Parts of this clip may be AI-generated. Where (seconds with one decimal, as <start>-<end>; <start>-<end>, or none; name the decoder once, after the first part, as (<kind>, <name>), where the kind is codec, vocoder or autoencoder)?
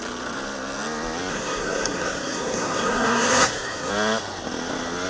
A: 1.3-3.9 (codec, SNAC)